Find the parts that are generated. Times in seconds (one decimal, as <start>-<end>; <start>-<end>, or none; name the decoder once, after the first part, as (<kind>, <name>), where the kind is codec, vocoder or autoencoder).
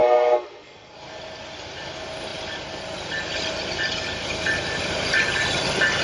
0.0-0.9 (codec, SNAC)